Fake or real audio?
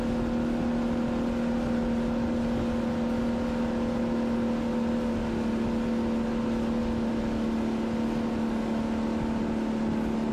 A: real